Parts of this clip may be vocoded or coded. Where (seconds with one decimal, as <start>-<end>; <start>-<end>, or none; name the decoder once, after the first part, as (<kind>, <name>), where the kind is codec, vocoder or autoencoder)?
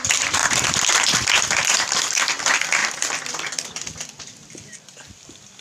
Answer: 0.0-0.4 (vocoder, BigVGAN v2); 1.6-5.6